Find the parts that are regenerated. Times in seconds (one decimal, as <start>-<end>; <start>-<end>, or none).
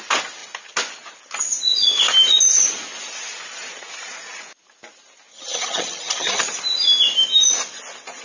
5.3-6.4